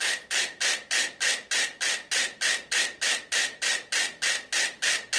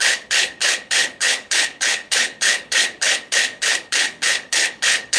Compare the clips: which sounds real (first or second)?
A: first